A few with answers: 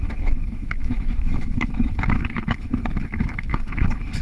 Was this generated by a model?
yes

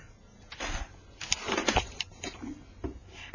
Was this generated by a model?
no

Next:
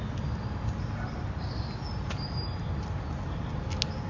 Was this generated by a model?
no